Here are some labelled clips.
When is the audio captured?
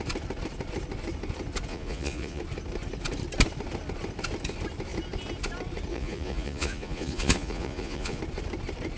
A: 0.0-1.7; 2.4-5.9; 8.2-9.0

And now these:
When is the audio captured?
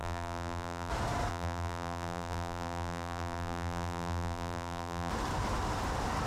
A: 0.9-1.3; 5.1-6.3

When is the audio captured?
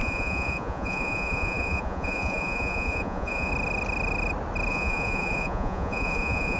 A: 3.5-4.7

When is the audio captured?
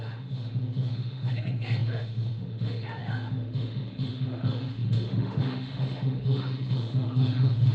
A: none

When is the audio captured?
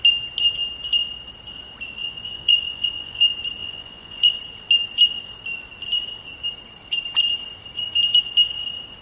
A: 0.0-2.0; 3.2-3.6; 4.4-9.0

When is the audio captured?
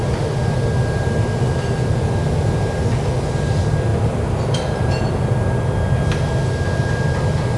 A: 0.0-3.9; 5.0-7.6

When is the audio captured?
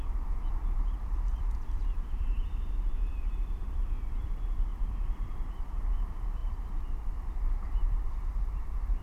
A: none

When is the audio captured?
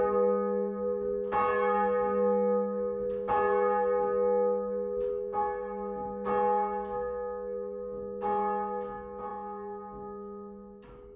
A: 0.0-11.2